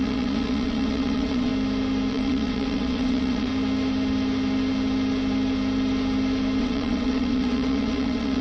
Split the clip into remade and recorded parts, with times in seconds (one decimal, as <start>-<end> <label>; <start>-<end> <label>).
0.0-1.5 remade; 1.5-2.1 recorded; 2.1-3.5 remade; 3.5-6.6 recorded; 6.6-8.4 remade